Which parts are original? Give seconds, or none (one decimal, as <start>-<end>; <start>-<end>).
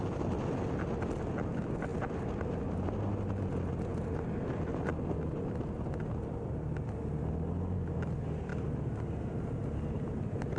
0.0-10.6